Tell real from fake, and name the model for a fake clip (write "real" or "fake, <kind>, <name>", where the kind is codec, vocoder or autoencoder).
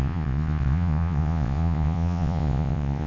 fake, vocoder, Vocos